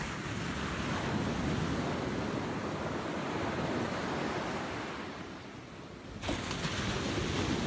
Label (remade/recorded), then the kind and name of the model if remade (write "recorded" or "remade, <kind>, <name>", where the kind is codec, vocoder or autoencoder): recorded